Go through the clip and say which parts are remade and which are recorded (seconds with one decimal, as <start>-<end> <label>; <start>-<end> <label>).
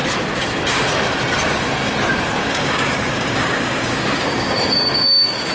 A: 0.0-2.4 recorded; 2.4-5.5 remade